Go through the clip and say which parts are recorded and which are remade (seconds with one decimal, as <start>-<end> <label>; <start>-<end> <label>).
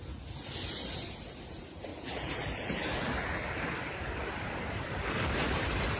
0.0-1.9 recorded; 1.9-3.5 remade; 3.5-6.0 recorded